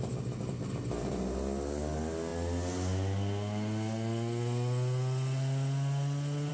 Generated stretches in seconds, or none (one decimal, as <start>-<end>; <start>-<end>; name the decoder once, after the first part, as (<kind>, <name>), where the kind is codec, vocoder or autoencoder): none